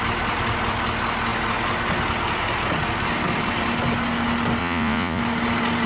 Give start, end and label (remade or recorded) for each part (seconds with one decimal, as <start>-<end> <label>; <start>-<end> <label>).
0.0-4.6 recorded; 4.6-5.2 remade; 5.2-5.9 recorded